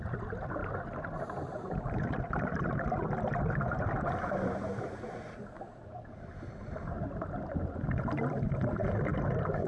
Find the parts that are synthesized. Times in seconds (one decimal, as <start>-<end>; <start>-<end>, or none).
none